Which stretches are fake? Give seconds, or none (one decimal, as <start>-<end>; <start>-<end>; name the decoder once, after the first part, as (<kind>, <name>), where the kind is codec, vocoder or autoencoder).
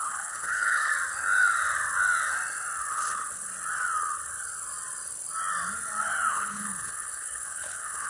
0.0-0.9 (codec, HILCodec); 2.9-3.5; 6.3-8.1